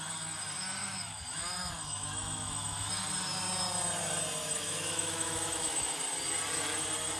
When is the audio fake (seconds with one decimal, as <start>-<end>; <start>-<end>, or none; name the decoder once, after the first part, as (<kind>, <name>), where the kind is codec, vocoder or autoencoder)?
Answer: 0.8-2.9 (autoencoder, DAC-VAE); 4.4-6.0